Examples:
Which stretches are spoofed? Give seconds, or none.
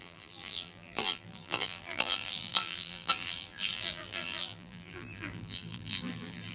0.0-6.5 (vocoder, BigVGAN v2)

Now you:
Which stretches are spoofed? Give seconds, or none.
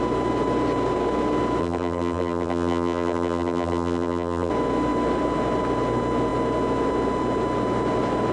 1.6-4.5 (vocoder, BigVGAN v2)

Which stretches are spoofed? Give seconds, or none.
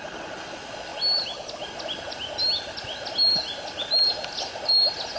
none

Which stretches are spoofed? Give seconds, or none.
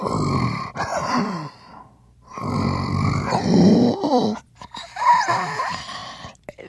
0.9-4.9 (vocoder, BigVGAN v2)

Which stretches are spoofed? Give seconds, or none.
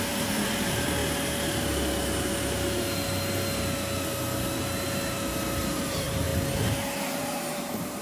0.0-1.0 (vocoder, BigVGAN v2); 5.6-6.3; 7.2-8.0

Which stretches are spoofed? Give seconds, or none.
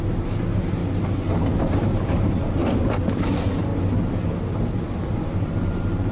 0.0-0.8 (vocoder, BigVGAN v2); 1.4-3.7; 5.1-6.1